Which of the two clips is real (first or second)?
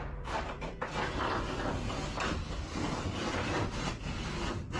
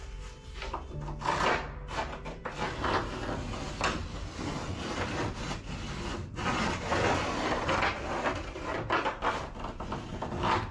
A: second